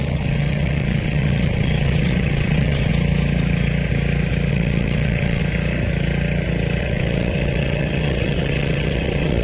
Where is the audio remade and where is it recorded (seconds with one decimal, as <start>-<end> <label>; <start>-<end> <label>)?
0.0-2.9 remade; 2.9-4.5 recorded; 4.5-5.4 remade; 5.4-6.8 recorded; 6.8-9.4 remade